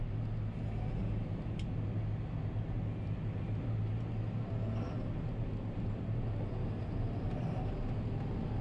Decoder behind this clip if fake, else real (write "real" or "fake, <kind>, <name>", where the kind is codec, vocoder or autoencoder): real